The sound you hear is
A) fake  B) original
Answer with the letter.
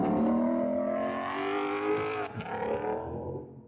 B